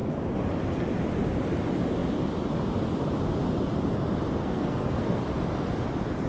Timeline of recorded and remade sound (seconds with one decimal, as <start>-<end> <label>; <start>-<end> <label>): 0.0-4.4 recorded; 4.4-5.2 remade; 5.2-6.3 recorded